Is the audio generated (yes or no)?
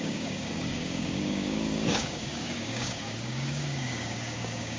yes